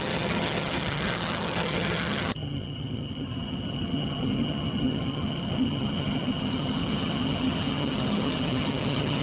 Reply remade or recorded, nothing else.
remade